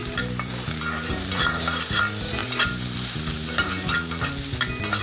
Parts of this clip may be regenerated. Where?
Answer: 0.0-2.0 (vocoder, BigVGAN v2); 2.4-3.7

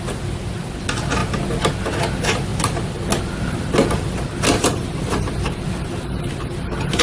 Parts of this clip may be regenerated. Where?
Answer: none

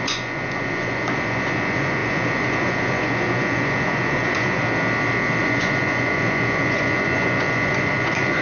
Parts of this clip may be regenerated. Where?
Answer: 0.0-4.6 (vocoder, Vocos); 5.4-8.4

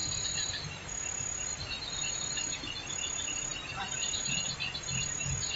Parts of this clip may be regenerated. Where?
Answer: 1.5-2.1 (vocoder, BigVGAN v2)

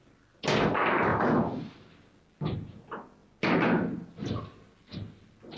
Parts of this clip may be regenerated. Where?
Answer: none

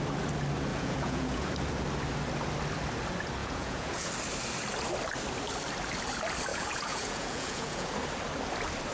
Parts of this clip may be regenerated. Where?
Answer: 0.7-1.5 (vocoder, Vocos); 3.4-4.1; 6.5-7.9